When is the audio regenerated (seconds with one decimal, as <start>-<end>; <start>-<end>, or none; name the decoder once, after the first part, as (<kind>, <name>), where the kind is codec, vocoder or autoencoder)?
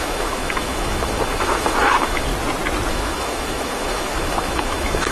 0.0-2.3 (autoencoder, DAC-VAE); 2.9-5.1